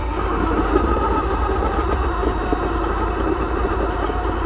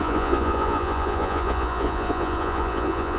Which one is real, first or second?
first